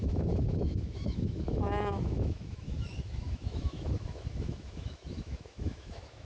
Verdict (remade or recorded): remade